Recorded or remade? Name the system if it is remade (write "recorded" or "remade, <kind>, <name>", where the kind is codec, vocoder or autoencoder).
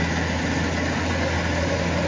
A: recorded